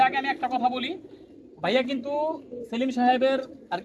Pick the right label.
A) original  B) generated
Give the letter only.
A